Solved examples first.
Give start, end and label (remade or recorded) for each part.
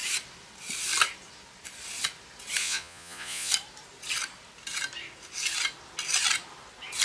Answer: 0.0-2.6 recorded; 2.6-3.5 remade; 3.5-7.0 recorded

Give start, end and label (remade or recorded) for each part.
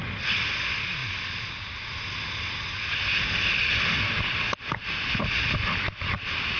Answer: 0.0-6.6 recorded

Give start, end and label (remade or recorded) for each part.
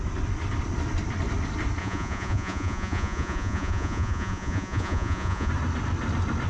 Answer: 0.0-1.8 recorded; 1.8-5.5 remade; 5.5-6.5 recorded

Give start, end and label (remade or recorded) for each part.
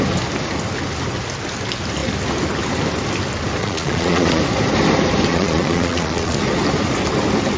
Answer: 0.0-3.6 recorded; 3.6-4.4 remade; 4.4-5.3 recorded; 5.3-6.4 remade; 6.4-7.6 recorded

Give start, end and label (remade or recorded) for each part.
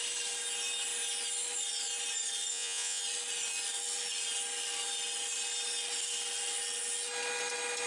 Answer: 0.0-2.5 recorded; 2.5-3.0 remade; 3.0-7.9 recorded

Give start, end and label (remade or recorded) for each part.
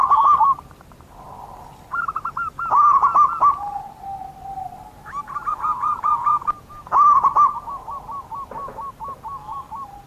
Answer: 0.0-5.5 recorded; 5.5-6.8 remade; 6.8-10.1 recorded